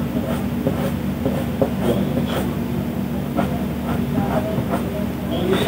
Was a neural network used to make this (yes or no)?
no